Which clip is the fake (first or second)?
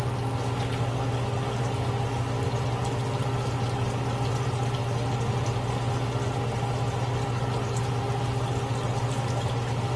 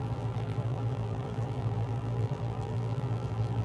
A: second